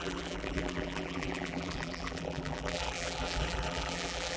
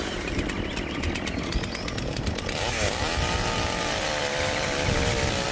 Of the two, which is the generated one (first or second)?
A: first